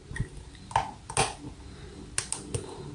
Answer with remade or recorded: recorded